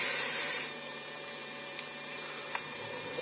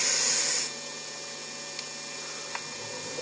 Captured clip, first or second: second